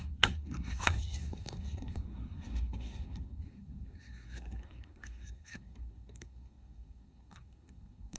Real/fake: fake